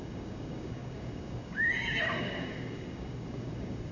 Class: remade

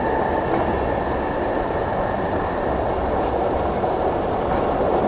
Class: recorded